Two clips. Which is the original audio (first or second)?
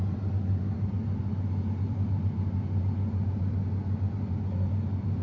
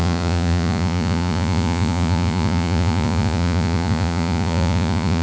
first